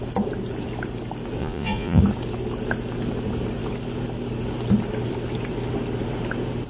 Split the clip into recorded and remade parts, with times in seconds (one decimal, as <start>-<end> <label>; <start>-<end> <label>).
0.0-1.4 recorded; 1.4-2.0 remade; 2.0-6.7 recorded